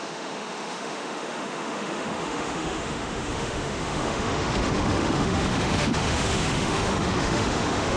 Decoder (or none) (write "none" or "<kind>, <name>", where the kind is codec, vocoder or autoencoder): autoencoder, DAC-VAE